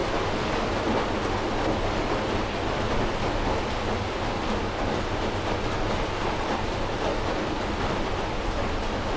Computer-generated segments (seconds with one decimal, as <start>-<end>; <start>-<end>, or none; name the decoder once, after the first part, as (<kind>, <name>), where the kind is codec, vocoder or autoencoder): none